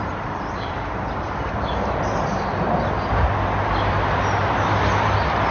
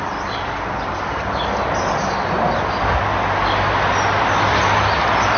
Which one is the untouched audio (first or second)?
second